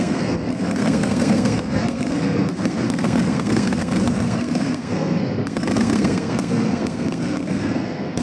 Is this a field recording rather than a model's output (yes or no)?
no